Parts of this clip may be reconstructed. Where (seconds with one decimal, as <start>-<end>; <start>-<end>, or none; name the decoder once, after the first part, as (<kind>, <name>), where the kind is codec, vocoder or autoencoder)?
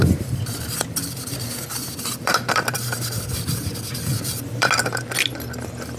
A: 0.0-3.6 (vocoder, BigVGAN v2); 4.1-4.7